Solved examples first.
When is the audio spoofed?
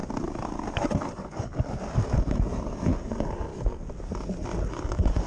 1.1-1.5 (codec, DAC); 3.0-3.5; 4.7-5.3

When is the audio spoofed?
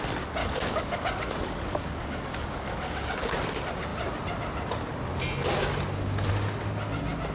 0.4-3.3 (codec, DAC)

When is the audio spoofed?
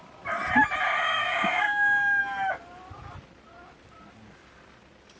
1.2-2.2 (codec, DAC)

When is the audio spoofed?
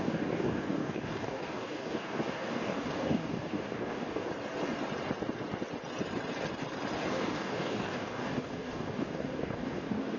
0.0-4.3 (codec, DAC); 7.1-10.2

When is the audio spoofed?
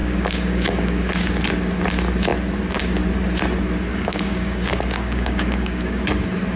0.0-1.4 (codec, DAC); 3.9-6.0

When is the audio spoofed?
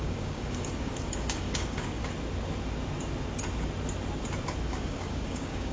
0.0-2.0 (codec, DAC); 4.7-5.7